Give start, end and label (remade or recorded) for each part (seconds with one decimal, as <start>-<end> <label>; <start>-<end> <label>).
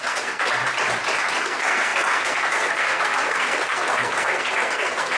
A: 0.0-0.6 remade; 0.6-1.3 recorded; 1.3-5.2 remade